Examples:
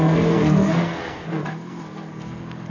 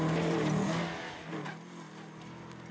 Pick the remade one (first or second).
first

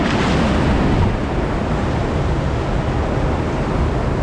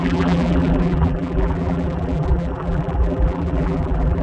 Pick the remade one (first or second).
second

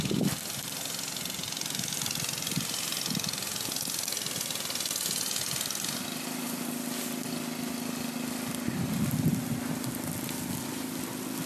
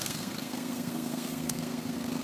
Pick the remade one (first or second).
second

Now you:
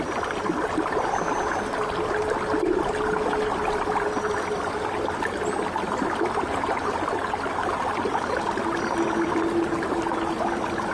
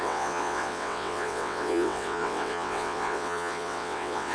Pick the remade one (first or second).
second